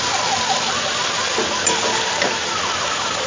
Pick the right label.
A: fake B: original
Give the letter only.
B